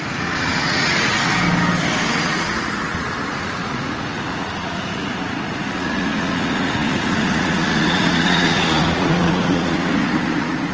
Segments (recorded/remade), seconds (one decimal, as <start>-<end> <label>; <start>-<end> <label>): 0.0-1.3 remade; 1.3-2.1 recorded; 2.1-10.7 remade